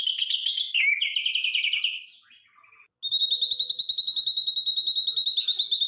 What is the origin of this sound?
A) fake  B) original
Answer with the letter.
B